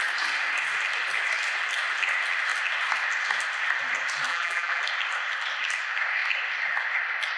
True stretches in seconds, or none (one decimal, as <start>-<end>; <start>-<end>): 0.0-4.3; 4.8-7.4